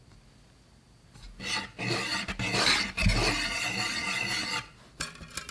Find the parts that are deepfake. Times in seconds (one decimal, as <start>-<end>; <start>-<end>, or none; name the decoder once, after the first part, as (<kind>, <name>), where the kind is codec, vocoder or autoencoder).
none